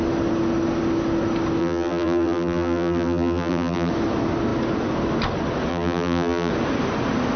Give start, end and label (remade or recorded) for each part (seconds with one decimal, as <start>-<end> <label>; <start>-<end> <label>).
0.0-1.6 recorded; 1.6-3.9 remade; 3.9-5.7 recorded; 5.7-6.5 remade; 6.5-7.4 recorded